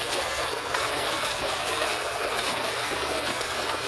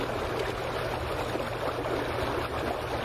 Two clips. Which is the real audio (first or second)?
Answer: second